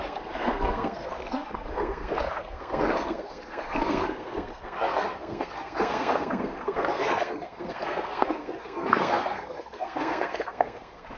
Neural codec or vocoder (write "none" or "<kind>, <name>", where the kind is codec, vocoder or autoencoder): codec, SNAC